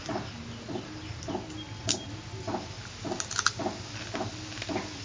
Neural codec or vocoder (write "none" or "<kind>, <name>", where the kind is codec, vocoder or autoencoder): none